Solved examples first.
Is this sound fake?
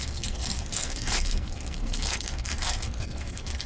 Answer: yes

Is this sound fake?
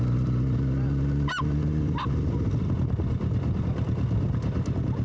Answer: no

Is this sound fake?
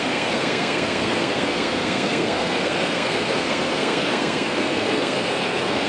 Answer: yes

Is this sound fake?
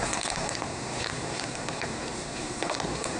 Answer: yes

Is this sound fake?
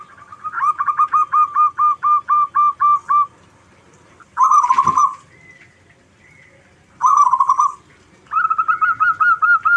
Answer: no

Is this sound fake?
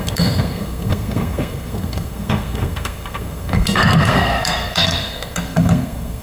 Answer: yes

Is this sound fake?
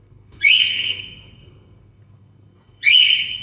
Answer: yes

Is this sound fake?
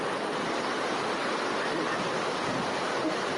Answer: no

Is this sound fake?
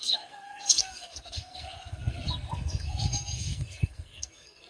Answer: yes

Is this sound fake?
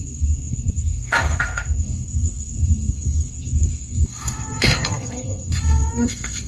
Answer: yes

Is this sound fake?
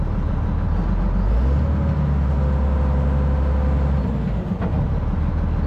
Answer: no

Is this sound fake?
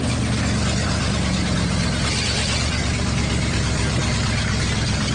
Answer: no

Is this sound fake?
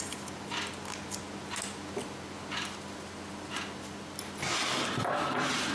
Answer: no